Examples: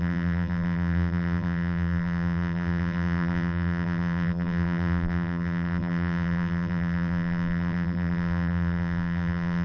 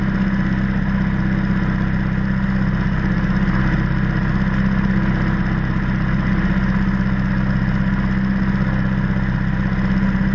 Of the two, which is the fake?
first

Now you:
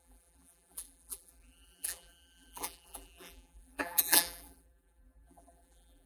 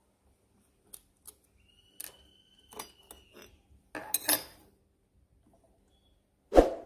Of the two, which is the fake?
first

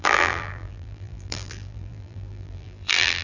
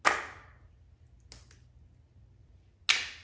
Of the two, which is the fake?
first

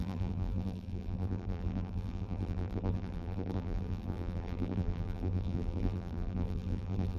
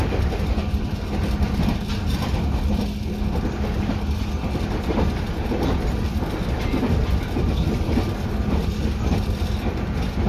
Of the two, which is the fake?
first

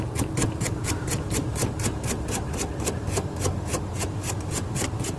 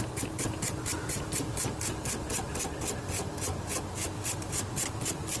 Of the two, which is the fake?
first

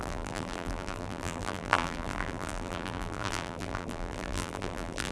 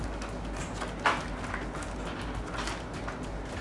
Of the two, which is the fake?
first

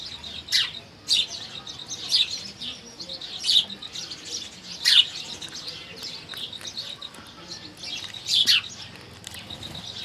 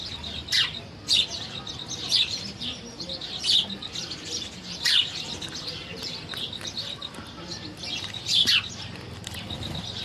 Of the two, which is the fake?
second